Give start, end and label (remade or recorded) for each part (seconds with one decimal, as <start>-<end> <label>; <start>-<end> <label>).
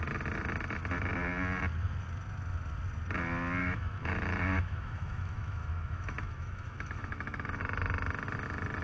0.0-3.6 recorded; 3.6-7.6 remade; 7.6-8.8 recorded